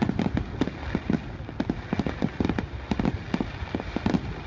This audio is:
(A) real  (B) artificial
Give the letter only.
A